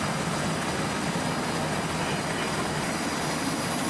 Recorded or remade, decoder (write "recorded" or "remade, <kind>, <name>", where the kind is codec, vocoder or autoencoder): recorded